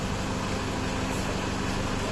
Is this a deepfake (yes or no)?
no